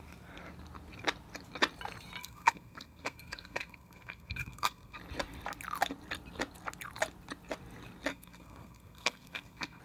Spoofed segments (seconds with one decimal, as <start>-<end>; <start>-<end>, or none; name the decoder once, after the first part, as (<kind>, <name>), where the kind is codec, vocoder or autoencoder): 2.2-5.0 (codec, SNAC); 8.1-9.8